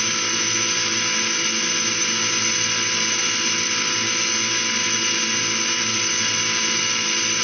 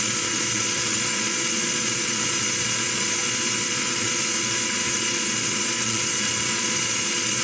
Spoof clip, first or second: second